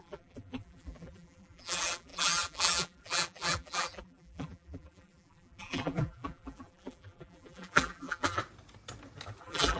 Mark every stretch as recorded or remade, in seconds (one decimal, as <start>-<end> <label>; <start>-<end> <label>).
0.0-8.4 remade; 8.4-9.4 recorded; 9.4-9.8 remade